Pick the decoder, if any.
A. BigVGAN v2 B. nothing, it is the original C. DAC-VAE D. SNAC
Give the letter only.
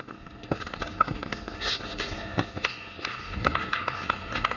D